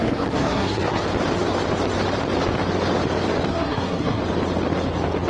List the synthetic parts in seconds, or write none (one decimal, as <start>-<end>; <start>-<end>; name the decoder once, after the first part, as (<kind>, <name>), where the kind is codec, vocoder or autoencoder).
0.0-1.0 (codec, SNAC); 3.5-4.2